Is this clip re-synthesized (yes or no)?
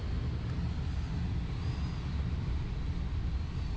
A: no